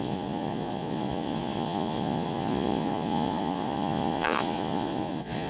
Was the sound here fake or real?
fake